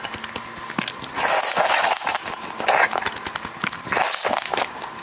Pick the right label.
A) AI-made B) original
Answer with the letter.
B